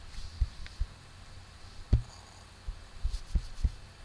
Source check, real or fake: real